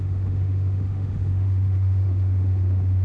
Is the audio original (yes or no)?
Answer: no